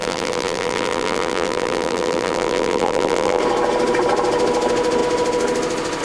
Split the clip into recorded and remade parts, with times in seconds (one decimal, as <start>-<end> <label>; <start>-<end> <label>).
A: 0.0-3.4 remade; 3.4-6.0 recorded